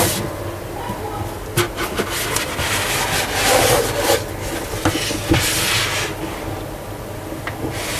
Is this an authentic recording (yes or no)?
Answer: yes